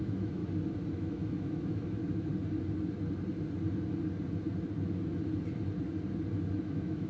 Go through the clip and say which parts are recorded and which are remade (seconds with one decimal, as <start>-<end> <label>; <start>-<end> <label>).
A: 0.0-0.4 remade; 0.4-0.9 recorded; 0.9-2.3 remade; 2.3-6.6 recorded; 6.6-7.1 remade